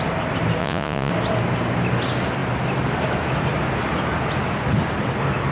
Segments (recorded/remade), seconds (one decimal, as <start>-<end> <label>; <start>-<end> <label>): 0.0-0.6 recorded; 0.6-1.1 remade; 1.1-5.5 recorded